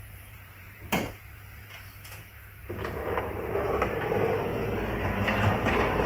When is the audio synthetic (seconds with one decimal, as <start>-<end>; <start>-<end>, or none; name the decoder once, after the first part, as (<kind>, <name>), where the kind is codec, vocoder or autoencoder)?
0.0-2.6 (vocoder, BigVGAN v2); 3.2-4.5; 5.5-6.1